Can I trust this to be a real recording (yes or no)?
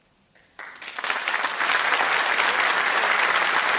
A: yes